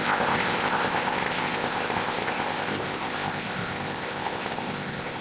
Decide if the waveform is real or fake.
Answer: fake